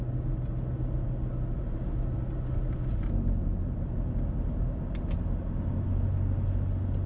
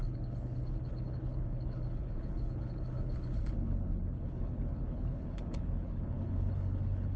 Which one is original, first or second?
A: first